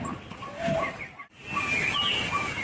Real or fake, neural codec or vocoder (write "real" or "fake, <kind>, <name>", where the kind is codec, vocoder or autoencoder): real